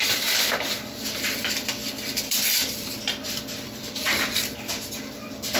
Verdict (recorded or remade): remade